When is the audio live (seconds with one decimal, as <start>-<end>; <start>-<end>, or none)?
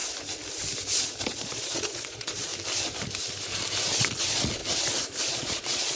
0.0-1.2; 2.5-4.0; 4.6-5.3